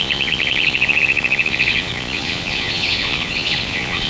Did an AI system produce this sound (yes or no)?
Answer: yes